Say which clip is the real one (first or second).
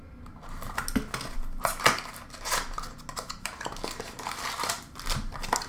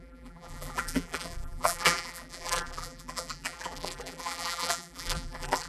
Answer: first